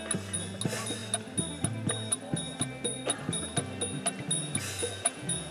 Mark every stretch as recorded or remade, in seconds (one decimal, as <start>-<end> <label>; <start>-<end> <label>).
0.0-4.8 recorded; 4.8-5.5 remade